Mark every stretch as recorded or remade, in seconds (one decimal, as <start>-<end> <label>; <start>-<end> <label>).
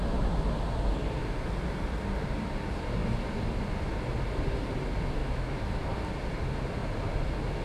0.0-5.2 recorded; 5.2-5.9 remade; 5.9-7.6 recorded